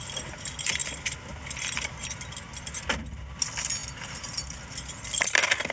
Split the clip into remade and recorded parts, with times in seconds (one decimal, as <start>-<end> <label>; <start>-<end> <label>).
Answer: 0.0-5.7 recorded